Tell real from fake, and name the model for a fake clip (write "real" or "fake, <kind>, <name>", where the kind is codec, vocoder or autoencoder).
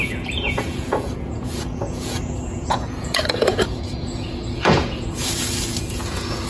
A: fake, vocoder, Vocos